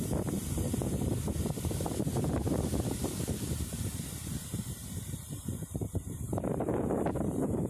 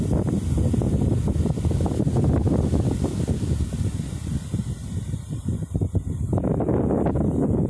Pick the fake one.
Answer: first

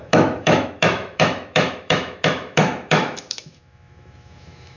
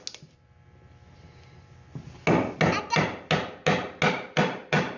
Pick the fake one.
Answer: first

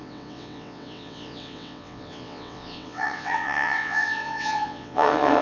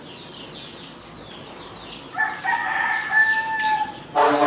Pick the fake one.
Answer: first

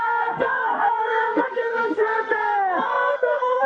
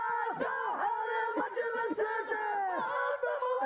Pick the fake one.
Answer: first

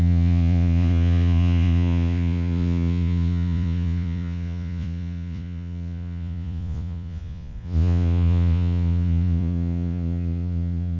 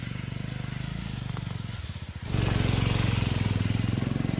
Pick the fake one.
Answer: first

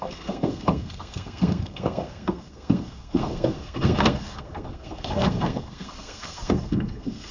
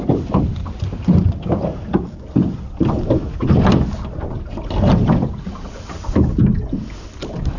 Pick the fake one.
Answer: first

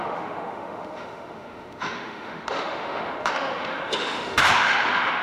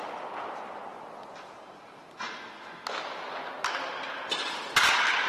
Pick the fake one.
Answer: first